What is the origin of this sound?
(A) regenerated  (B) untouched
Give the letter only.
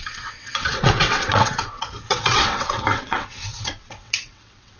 A